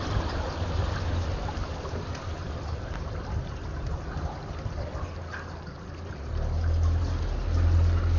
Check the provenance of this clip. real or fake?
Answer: real